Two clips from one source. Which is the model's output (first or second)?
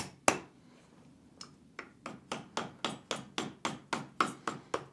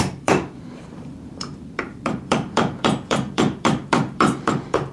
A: second